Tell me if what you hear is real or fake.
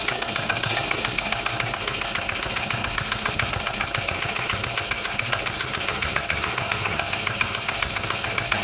fake